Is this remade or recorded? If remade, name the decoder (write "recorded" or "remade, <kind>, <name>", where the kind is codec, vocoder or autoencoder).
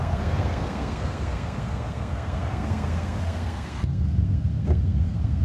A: remade, codec, SNAC